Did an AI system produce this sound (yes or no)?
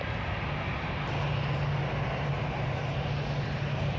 no